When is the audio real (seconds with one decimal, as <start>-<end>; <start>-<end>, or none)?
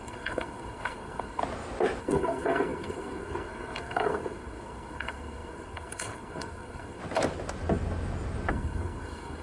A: 1.4-2.0; 7.0-8.5